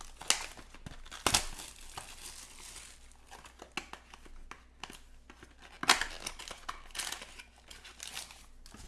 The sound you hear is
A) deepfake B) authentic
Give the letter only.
B